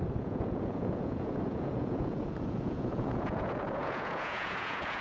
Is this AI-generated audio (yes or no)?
yes